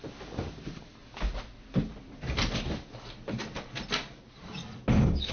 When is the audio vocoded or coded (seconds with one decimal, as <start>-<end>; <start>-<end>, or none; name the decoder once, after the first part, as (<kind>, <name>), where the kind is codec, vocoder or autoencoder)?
none